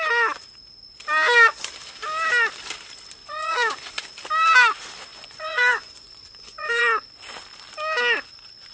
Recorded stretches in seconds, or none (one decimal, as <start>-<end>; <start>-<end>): 0.0-3.2; 4.0-5.1; 6.8-8.7